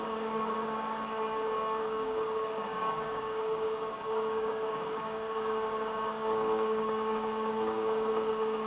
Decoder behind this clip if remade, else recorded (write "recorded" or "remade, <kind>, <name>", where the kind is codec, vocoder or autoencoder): remade, codec, DAC